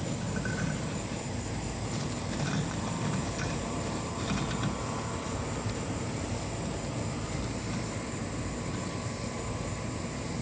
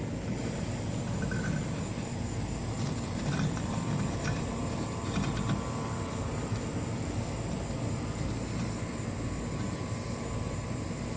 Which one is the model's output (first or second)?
first